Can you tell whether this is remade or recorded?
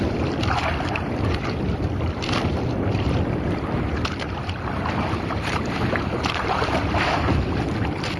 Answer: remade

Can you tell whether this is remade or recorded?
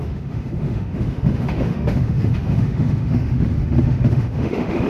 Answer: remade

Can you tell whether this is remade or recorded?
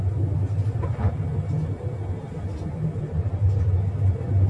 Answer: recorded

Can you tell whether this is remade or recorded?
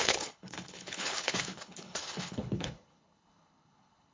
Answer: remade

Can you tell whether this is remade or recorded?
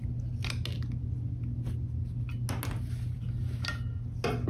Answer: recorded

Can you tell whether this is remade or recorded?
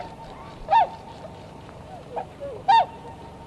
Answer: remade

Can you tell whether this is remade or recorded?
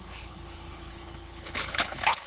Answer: remade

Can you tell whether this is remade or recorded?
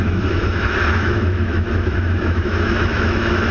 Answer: remade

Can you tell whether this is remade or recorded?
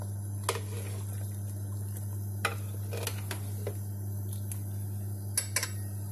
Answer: recorded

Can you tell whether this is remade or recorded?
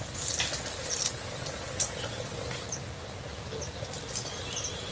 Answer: recorded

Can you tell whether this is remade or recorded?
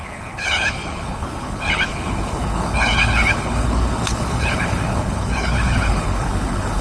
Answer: remade